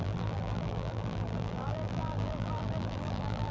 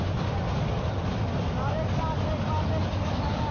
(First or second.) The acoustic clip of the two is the second